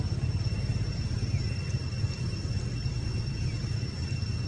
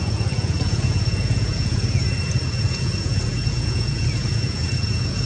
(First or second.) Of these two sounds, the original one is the first